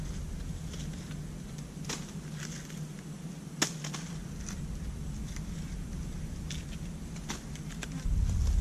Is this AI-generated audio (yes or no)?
no